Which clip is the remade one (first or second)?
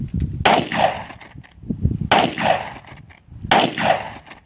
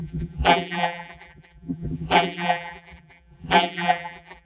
second